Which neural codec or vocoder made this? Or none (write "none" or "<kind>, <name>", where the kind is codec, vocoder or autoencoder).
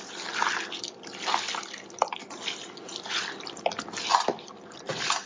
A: none